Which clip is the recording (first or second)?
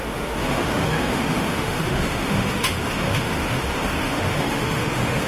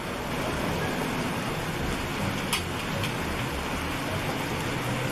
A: second